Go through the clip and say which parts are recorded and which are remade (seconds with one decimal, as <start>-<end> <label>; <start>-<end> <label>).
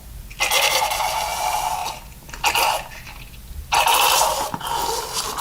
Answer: 0.0-5.4 recorded